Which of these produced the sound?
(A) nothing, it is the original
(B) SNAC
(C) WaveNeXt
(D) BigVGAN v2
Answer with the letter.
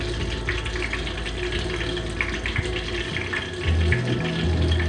A